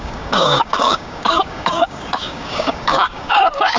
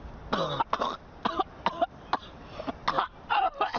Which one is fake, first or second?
first